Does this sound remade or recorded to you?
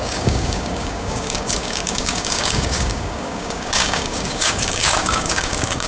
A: remade